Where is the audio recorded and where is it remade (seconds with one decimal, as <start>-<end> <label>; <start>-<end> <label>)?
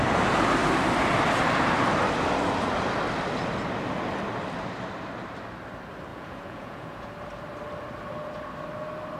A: 0.0-6.1 recorded; 6.1-7.1 remade; 7.1-9.2 recorded